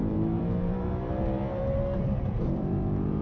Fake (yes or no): yes